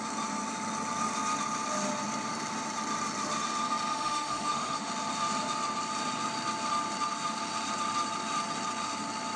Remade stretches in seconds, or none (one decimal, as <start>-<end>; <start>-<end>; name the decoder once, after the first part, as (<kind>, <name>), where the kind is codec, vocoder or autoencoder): 3.9-4.9 (autoencoder, DAC-VAE)